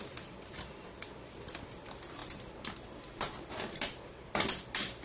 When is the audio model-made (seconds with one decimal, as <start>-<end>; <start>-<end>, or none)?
0.0-5.0